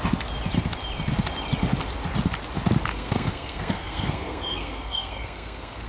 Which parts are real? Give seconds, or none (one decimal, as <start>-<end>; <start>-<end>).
0.0-2.9

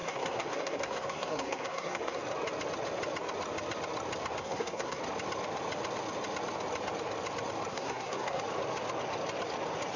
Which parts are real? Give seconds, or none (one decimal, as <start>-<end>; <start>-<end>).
2.2-4.4; 5.0-7.7; 8.4-10.0

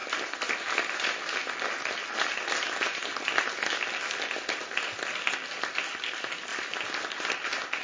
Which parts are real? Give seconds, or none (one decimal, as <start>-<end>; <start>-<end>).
0.0-7.8

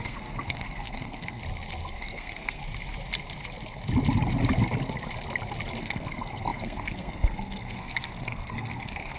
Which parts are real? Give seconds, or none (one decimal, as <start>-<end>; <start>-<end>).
1.4-1.9; 2.6-5.8

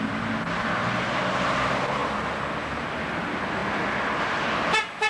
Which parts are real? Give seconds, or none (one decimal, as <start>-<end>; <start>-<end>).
0.0-5.1

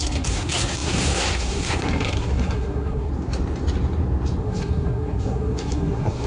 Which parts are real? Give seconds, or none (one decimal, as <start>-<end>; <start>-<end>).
3.1-4.4

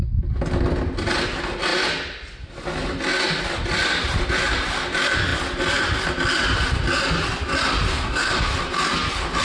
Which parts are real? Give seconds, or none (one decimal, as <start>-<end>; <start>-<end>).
0.0-7.9; 8.5-9.4